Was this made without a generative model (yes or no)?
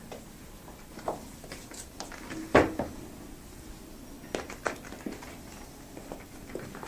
yes